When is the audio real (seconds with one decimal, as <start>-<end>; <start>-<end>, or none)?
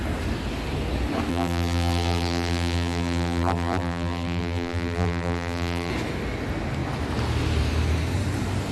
0.0-1.3; 5.9-8.7